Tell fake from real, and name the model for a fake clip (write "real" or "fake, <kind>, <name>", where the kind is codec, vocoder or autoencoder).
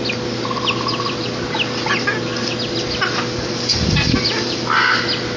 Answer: real